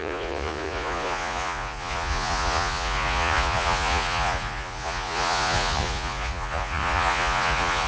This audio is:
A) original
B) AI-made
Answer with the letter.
B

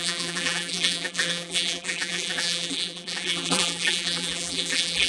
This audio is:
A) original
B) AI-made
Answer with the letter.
B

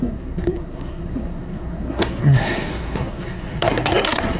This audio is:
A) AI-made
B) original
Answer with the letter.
A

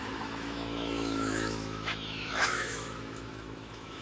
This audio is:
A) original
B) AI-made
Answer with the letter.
B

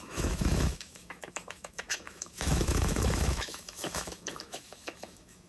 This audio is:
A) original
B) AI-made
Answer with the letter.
B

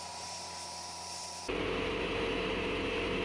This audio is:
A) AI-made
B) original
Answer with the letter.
A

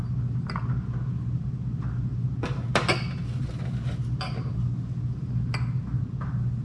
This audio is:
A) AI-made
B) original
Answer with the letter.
B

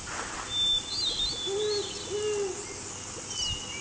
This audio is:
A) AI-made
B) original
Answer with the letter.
B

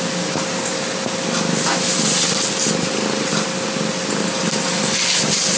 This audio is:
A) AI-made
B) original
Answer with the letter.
B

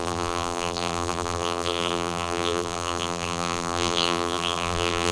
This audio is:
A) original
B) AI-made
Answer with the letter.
B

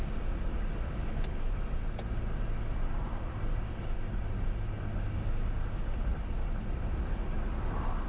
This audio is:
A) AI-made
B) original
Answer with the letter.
B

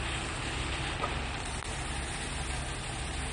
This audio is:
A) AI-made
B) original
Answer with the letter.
B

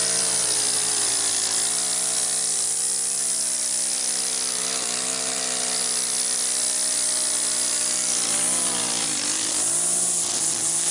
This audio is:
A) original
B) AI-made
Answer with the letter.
A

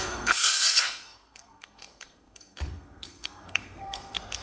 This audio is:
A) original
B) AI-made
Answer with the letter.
B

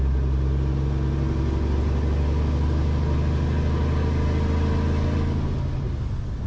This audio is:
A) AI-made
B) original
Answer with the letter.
B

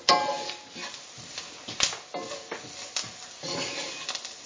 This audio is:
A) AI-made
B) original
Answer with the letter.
B